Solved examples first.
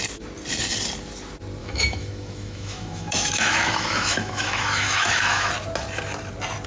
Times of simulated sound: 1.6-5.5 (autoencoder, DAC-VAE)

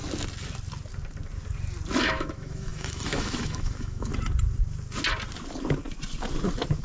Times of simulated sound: 2.0-4.1 (autoencoder, DAC-VAE)

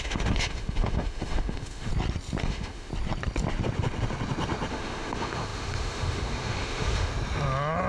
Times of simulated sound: 0.0-1.9 (autoencoder, DAC-VAE); 2.4-2.9; 4.7-7.1

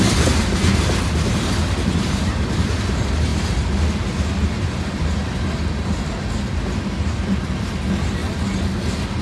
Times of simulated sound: none

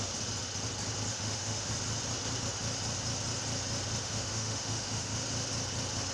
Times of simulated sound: 1.1-1.7 (autoencoder, DAC-VAE); 4.0-5.1

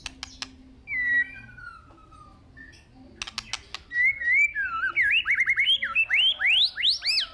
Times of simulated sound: none